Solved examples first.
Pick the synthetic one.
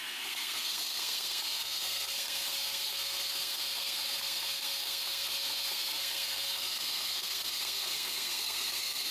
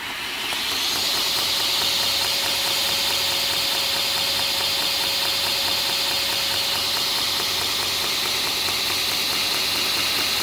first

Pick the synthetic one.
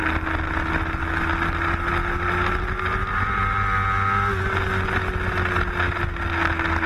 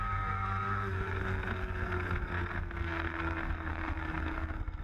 second